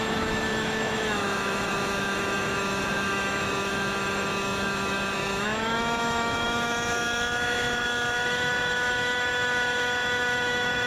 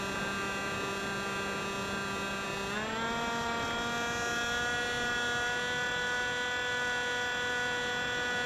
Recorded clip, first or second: second